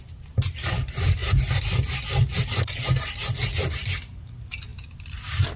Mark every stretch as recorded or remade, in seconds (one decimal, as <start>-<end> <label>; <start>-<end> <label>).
0.0-5.6 recorded